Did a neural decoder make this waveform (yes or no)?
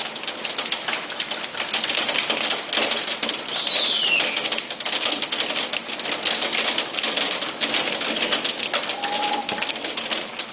no